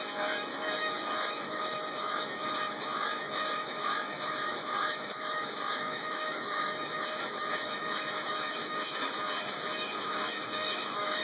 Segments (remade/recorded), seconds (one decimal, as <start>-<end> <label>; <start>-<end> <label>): 0.0-11.2 remade